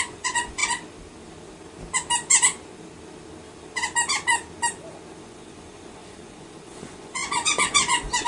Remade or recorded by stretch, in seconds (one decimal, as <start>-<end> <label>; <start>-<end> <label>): 0.0-0.6 remade; 0.6-5.2 recorded; 5.2-8.3 remade